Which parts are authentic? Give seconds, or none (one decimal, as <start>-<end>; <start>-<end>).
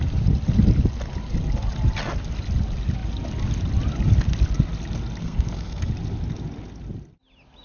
0.0-5.2; 5.9-7.6